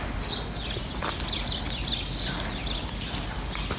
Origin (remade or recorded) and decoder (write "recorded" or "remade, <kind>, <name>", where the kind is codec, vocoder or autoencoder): recorded